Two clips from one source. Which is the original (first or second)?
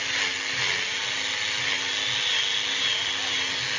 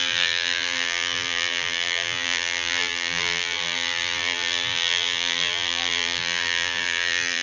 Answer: first